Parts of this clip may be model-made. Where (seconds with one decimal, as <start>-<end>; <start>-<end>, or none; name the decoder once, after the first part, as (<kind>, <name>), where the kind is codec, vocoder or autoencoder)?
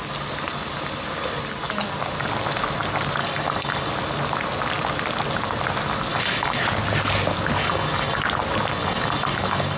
3.2-3.9 (codec, DAC); 6.1-6.6; 7.6-8.2; 8.8-9.8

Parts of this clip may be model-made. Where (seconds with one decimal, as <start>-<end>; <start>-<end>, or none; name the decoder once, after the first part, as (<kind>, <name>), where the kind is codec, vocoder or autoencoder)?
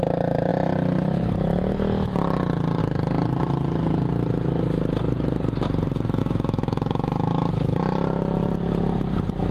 6.2-7.5 (autoencoder, DAC-VAE)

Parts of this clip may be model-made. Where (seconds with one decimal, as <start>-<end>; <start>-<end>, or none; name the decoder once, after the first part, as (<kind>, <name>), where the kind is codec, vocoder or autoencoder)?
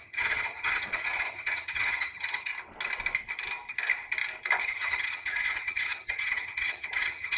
0.0-2.5 (vocoder, HiFi-GAN); 4.6-7.4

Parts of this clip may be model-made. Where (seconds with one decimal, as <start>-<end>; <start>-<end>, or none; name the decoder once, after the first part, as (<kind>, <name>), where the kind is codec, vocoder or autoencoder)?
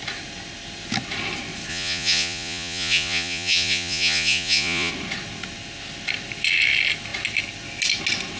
1.7-4.9 (vocoder, Vocos)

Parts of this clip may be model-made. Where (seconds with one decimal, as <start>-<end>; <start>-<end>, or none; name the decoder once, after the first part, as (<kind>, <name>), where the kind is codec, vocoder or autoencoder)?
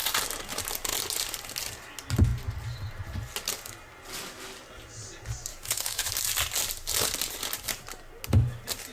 5.5-6.1 (autoencoder, DAC-VAE)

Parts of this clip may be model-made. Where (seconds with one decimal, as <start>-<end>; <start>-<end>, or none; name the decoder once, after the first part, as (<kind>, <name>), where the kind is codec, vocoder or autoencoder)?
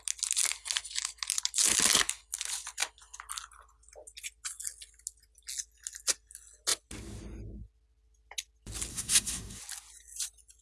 8.9-9.6 (codec, SNAC)